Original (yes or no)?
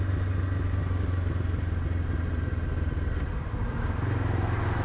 yes